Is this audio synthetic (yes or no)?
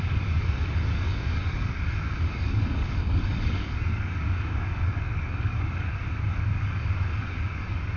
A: yes